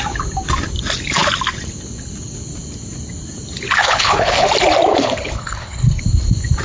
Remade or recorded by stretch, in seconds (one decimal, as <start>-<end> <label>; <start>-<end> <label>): 0.0-3.8 recorded; 3.8-4.5 remade; 4.5-4.9 recorded; 4.9-6.0 remade; 6.0-6.6 recorded